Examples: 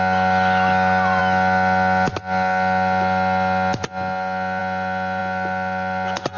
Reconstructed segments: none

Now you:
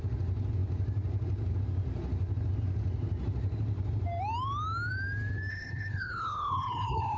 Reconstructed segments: 5.5-7.2

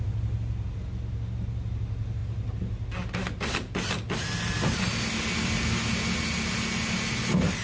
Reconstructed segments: none

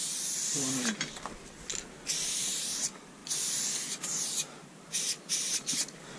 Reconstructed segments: 3.2-6.2